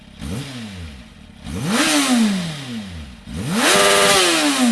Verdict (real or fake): real